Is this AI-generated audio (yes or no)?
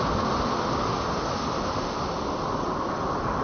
no